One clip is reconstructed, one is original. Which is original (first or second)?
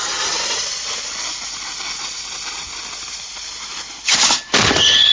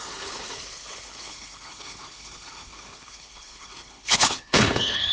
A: first